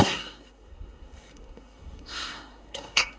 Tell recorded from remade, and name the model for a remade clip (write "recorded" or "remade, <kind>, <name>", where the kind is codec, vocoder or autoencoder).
remade, codec, SNAC